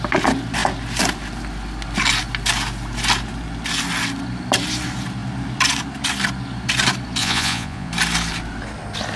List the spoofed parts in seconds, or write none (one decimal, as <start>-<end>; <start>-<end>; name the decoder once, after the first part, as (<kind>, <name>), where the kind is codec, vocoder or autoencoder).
7.2-7.9 (vocoder, Vocos)